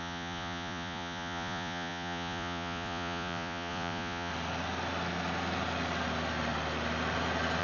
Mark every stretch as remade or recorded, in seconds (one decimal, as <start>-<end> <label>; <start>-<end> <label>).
0.0-4.3 remade; 4.3-7.6 recorded